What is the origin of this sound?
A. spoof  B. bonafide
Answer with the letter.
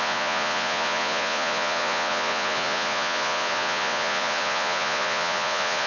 A